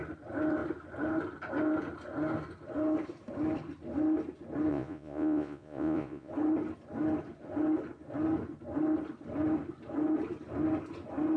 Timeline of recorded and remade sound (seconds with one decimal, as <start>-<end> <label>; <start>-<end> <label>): 0.0-4.7 recorded; 4.7-6.3 remade; 6.3-11.4 recorded